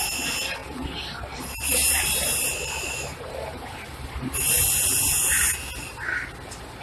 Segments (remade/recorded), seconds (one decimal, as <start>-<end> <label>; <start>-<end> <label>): 0.0-0.6 recorded; 0.6-4.6 remade; 4.6-6.8 recorded